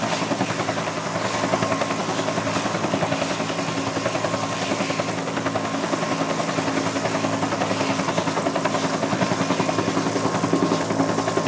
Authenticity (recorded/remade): recorded